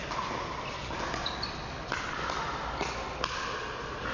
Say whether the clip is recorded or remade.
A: recorded